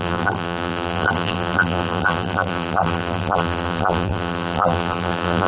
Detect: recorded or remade remade